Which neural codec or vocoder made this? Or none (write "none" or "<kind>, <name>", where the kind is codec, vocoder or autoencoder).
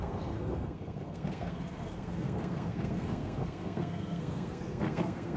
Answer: codec, SNAC